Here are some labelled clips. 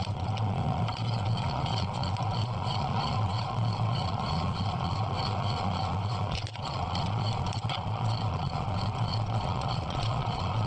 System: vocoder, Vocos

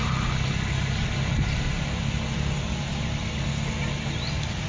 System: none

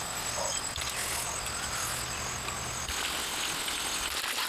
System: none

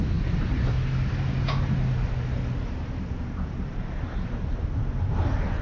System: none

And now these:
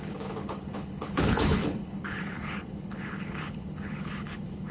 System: codec, HILCodec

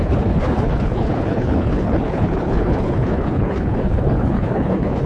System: codec, HILCodec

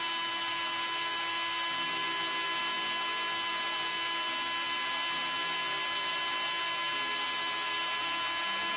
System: none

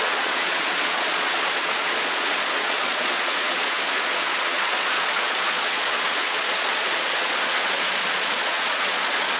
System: vocoder, Vocos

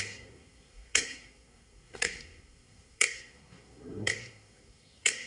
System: codec, SNAC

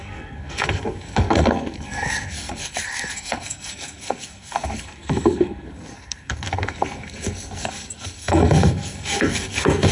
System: codec, SNAC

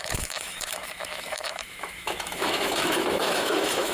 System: autoencoder, DAC-VAE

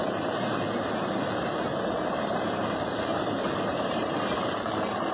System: vocoder, BigVGAN v2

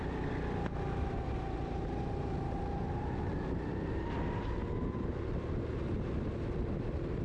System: none